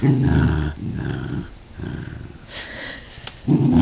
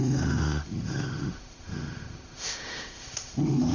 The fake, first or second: second